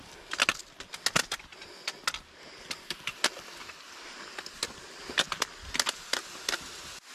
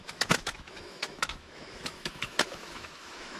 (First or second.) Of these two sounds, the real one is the first